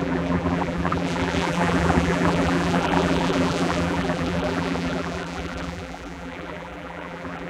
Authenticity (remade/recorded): remade